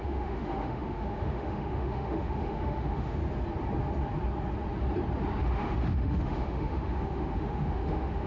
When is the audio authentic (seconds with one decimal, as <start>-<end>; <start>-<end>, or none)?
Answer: 3.2-5.4